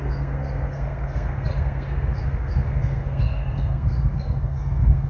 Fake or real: fake